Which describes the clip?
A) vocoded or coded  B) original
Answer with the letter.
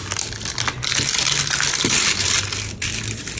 B